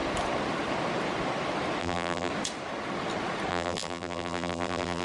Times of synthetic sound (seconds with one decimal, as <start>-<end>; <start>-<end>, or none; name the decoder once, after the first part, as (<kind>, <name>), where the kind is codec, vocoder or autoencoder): 1.8-2.3 (vocoder, BigVGAN v2); 3.5-5.0